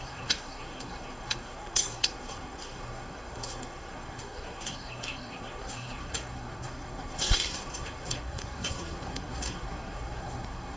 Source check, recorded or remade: remade